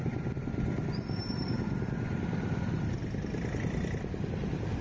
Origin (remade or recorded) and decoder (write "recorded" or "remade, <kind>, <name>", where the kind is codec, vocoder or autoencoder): recorded